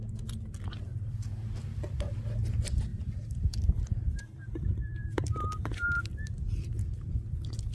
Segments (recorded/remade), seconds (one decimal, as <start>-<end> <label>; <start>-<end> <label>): 0.0-0.9 recorded; 0.9-1.5 remade; 1.5-2.9 recorded; 2.9-6.0 remade; 6.0-7.7 recorded